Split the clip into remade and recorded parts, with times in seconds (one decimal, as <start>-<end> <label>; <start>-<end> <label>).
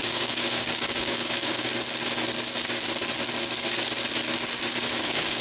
0.0-1.7 remade; 1.7-4.9 recorded; 4.9-5.4 remade